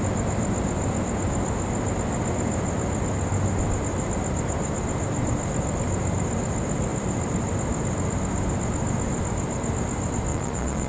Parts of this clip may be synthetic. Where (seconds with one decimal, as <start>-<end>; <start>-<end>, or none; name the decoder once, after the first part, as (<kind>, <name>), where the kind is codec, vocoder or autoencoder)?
10.3-10.9 (vocoder, Vocos)